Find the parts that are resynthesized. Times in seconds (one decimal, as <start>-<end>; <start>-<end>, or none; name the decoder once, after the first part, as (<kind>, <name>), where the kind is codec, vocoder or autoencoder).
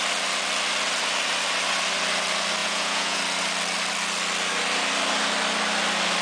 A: 2.6-3.2 (vocoder, Vocos)